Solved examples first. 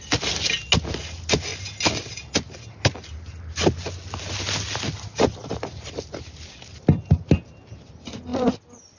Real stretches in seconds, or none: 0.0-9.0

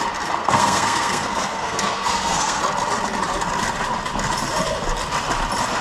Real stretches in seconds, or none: 0.0-0.4; 2.6-5.8

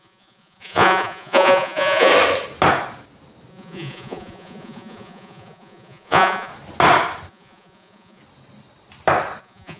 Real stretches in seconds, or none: 2.1-3.5; 6.5-7.3; 8.2-9.4

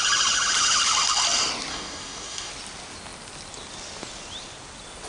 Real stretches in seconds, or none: 0.0-1.7; 2.5-5.1

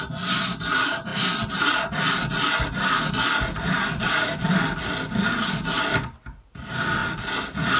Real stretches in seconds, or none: 0.0-7.8